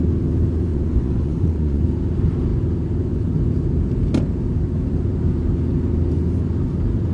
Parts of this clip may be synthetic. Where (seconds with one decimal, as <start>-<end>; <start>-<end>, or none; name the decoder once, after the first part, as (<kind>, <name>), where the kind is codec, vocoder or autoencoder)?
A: 0.7-1.8 (vocoder, Vocos)